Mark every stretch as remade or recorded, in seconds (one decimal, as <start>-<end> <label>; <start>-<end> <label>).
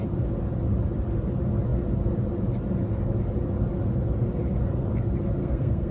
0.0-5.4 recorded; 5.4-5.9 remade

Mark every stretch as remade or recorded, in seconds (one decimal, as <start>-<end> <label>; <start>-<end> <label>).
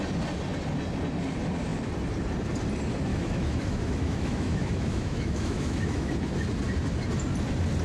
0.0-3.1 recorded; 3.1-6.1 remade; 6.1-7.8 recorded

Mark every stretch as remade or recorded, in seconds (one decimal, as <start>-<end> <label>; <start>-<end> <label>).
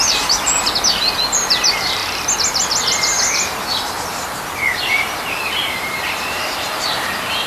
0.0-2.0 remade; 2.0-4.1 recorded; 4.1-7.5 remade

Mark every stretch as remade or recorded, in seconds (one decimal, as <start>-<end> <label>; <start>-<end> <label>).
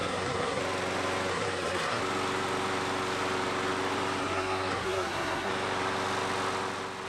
0.0-0.6 remade; 0.6-1.3 recorded; 1.3-2.0 remade; 2.0-4.2 recorded; 4.2-5.5 remade; 5.5-7.1 recorded